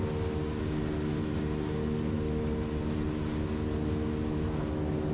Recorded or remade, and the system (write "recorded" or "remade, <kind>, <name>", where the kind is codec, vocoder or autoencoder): recorded